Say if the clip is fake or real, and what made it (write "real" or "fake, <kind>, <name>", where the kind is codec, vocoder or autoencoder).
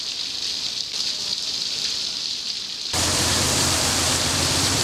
fake, vocoder, BigVGAN v2